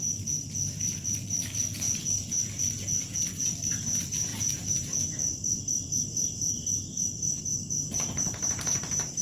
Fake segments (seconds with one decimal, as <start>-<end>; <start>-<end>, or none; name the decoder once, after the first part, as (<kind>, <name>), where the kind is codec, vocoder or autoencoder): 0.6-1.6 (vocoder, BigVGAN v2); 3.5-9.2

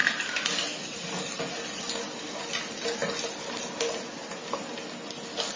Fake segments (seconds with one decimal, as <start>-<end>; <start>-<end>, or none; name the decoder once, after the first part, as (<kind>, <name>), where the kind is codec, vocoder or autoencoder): none

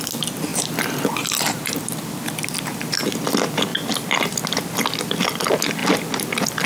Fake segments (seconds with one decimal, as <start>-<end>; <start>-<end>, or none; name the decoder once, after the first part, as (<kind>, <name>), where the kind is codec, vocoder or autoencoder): 0.5-1.6 (vocoder, BigVGAN v2)

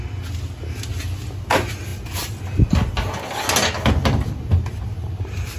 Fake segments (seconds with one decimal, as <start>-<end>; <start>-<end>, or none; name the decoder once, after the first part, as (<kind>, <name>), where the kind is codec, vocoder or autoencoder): none